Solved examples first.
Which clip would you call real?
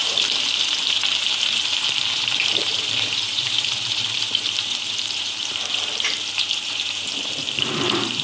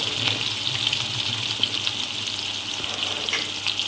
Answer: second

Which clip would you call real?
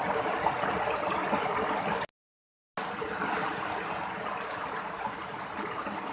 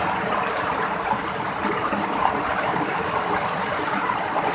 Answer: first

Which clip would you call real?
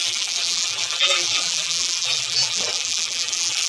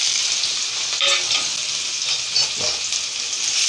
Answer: second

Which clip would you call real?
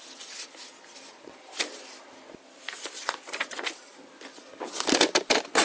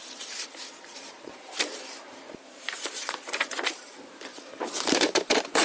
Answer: first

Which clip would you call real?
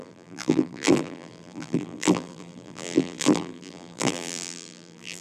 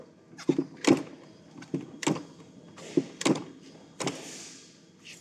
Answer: second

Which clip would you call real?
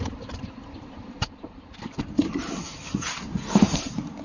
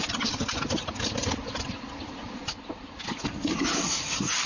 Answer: second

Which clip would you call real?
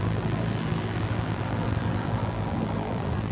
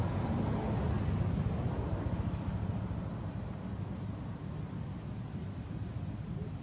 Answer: second